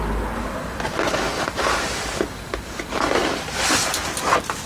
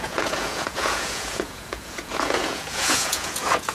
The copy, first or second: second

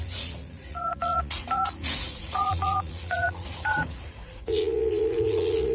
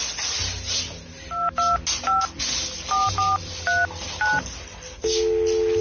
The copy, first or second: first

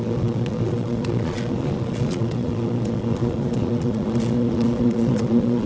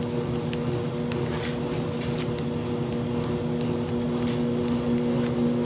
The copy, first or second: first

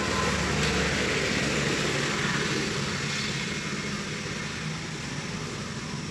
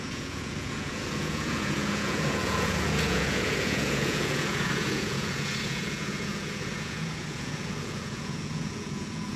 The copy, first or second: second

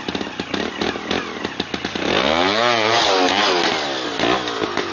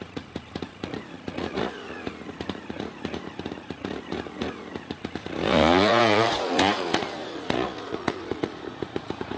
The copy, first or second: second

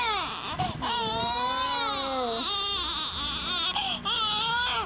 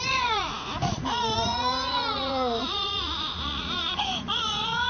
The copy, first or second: second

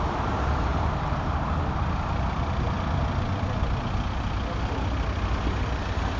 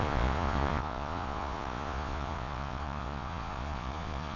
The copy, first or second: second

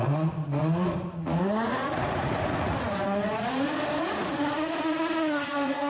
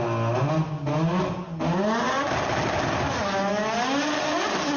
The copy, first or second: first